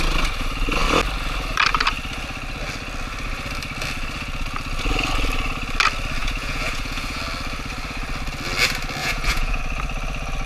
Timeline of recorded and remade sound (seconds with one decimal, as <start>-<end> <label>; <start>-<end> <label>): 0.0-6.2 recorded; 6.2-7.2 remade; 7.2-9.0 recorded; 9.0-9.6 remade; 9.6-10.5 recorded